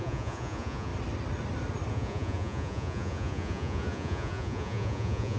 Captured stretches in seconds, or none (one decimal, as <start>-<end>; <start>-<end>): 0.9-1.9